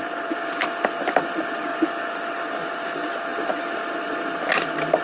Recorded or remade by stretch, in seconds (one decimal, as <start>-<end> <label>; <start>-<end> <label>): 0.0-1.7 remade; 1.7-2.5 recorded; 2.5-3.3 remade; 3.3-4.5 recorded; 4.5-5.0 remade